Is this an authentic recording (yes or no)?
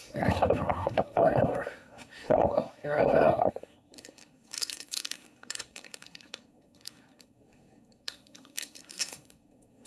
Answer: no